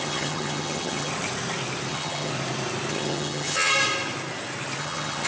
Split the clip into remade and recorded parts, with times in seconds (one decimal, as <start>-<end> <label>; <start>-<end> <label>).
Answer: 0.0-1.1 remade; 1.1-1.9 recorded; 1.9-2.3 remade; 2.3-2.9 recorded; 2.9-3.7 remade; 3.7-4.8 recorded; 4.8-5.3 remade